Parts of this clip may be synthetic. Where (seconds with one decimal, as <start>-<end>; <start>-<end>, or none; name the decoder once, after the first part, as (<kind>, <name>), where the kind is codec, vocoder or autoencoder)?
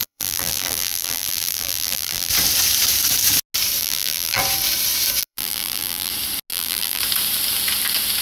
0.0-2.3 (vocoder, BigVGAN v2); 3.8-4.4; 5.2-6.1; 6.5-7.0